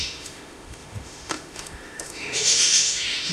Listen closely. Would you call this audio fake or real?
fake